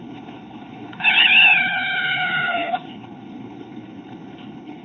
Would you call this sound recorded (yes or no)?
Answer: no